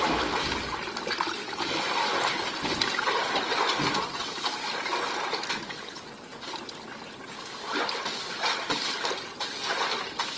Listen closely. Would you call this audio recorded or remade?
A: recorded